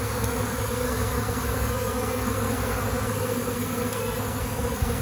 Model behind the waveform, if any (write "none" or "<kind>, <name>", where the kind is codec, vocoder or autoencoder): codec, SNAC